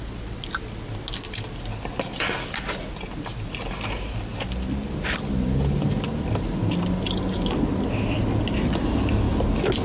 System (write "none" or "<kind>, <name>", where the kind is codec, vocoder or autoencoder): none